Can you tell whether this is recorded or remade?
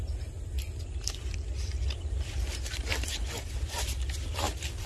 recorded